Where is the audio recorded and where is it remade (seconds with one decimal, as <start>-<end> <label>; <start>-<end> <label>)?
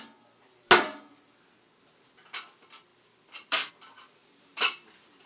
0.0-2.9 recorded; 2.9-3.7 remade; 3.7-4.2 recorded; 4.2-5.3 remade